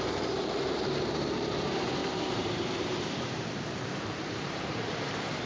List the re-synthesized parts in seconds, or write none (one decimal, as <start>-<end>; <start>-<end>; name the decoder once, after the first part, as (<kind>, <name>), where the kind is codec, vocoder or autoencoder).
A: 0.0-5.5 (vocoder, BigVGAN v2)